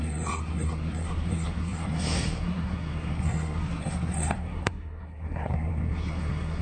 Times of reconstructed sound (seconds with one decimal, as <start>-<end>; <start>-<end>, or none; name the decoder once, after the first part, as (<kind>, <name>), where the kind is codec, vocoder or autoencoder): 0.0-6.6 (codec, SNAC)